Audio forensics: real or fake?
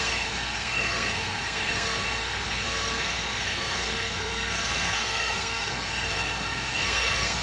fake